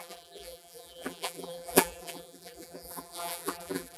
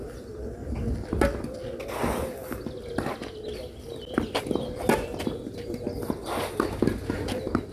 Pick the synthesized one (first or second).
first